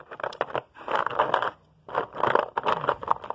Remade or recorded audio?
recorded